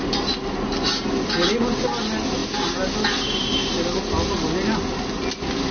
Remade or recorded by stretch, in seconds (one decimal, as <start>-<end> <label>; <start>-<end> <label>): 0.0-5.7 recorded